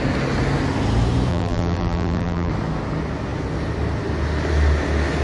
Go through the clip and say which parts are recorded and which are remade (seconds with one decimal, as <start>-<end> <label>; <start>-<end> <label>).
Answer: 0.0-1.3 recorded; 1.3-2.5 remade; 2.5-5.2 recorded